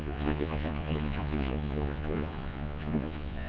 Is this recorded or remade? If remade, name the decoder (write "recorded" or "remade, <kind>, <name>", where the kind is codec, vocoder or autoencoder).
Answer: remade, vocoder, Vocos